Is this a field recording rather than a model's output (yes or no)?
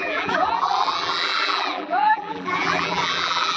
no